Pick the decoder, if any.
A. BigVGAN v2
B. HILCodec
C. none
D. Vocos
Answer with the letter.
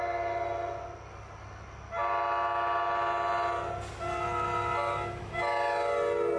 C